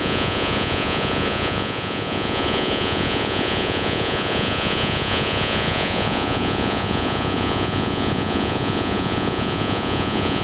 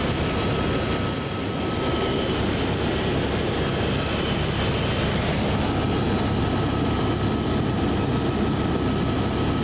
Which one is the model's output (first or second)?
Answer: first